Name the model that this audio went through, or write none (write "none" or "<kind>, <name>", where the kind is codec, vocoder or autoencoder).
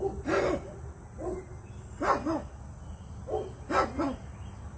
none